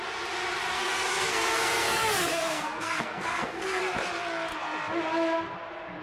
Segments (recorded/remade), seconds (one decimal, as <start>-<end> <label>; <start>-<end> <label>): 0.0-0.7 recorded; 0.7-3.8 remade; 3.8-6.0 recorded